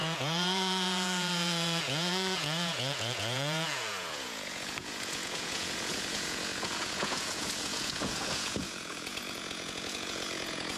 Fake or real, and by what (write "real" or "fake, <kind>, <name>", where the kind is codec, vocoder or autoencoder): fake, vocoder, Vocos